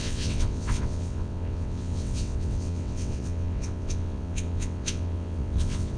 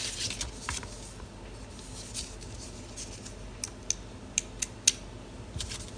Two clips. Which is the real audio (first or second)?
second